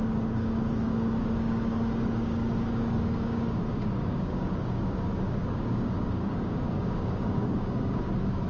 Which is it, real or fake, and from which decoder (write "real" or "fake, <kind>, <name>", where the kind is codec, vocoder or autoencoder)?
fake, codec, DAC